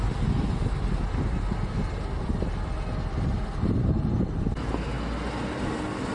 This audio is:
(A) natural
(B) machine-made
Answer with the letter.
A